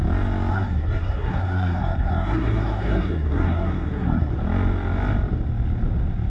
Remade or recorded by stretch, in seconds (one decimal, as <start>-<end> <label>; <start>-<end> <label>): 0.0-0.5 recorded; 0.5-4.3 remade; 4.3-6.3 recorded